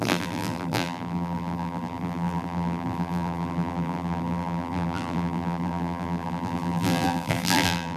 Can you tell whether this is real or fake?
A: fake